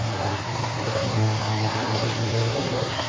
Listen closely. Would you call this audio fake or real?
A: fake